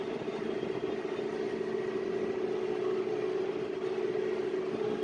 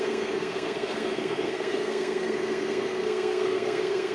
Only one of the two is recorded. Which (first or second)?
first